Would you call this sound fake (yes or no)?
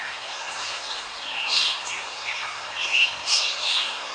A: yes